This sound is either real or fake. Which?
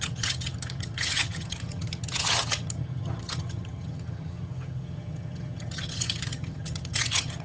fake